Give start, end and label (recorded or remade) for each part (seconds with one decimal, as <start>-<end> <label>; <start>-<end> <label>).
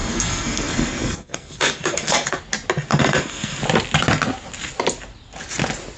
0.0-2.4 remade; 2.4-2.9 recorded; 2.9-3.6 remade; 3.6-6.0 recorded